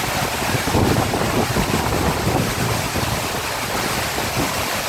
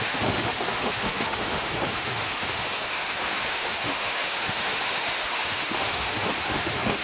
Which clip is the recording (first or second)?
first